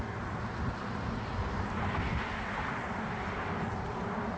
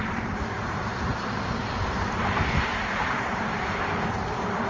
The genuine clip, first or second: first